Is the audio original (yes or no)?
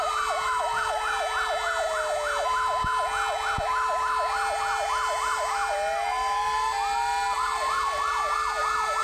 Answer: yes